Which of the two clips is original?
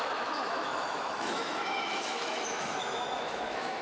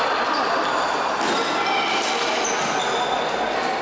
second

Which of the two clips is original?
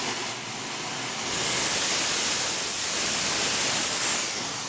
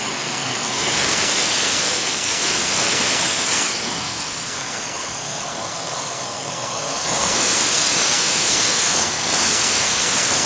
first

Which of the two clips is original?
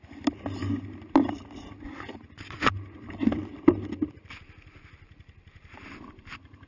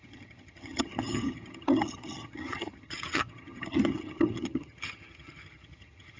first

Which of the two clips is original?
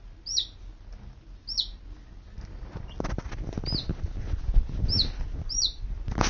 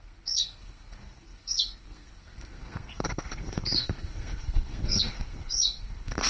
first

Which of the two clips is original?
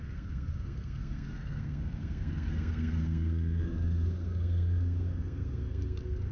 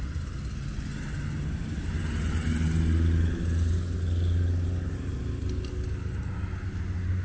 second